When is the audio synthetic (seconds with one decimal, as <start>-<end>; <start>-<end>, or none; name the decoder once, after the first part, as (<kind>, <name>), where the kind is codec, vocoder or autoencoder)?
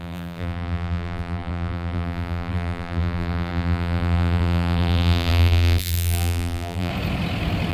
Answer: 0.0-6.9 (vocoder, BigVGAN v2)